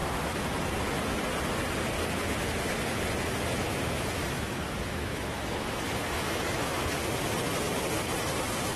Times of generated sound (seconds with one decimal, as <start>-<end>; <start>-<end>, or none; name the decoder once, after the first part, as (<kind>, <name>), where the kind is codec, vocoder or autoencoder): 3.5-6.9 (autoencoder, DAC-VAE)